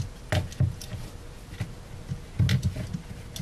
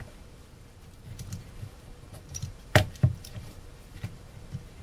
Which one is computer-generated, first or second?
second